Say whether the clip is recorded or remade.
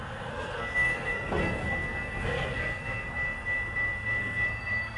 remade